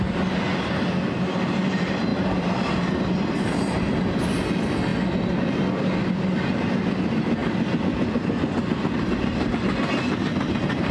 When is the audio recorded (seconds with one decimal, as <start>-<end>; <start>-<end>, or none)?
0.0-2.1; 3.8-10.9